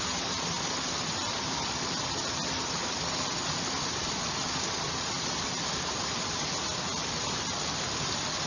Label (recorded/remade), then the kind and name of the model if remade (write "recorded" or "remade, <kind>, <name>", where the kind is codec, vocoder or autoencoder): remade, vocoder, BigVGAN v2